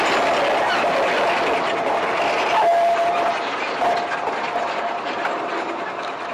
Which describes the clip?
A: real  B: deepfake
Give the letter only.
A